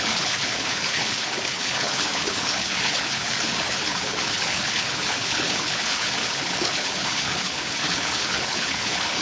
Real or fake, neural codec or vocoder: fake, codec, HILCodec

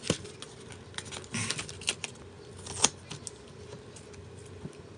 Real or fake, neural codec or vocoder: real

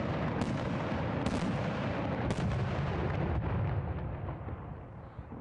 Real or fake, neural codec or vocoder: real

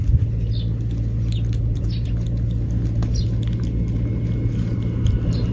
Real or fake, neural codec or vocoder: real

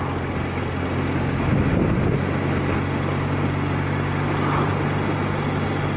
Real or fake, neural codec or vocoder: real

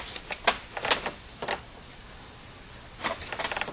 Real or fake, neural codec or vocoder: real